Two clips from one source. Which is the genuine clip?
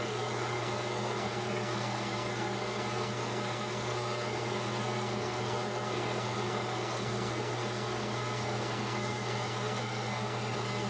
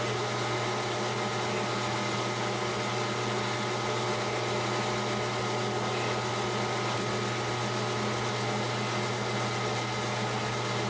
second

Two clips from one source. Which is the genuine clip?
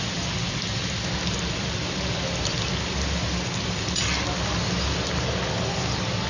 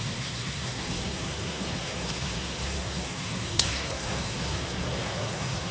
first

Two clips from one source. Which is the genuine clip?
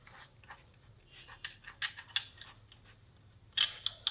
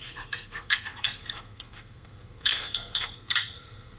first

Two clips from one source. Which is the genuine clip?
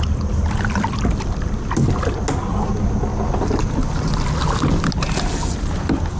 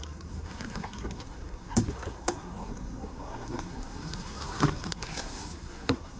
first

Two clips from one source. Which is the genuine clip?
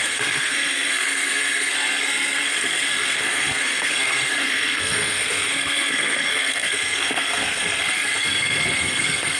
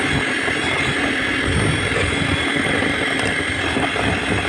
second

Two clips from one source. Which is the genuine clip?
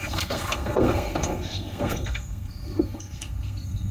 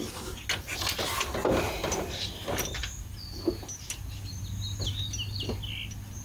second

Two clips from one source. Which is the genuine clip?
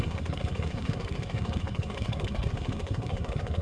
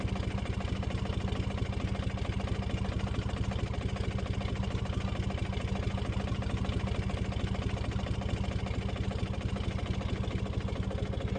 second